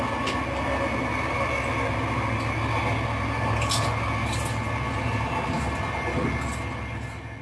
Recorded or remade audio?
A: recorded